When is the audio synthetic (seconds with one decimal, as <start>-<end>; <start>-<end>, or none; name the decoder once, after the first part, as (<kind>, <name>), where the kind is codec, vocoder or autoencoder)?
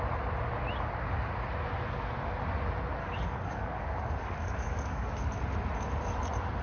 3.0-5.4 (codec, DAC)